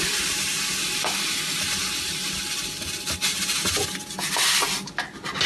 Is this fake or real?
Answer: real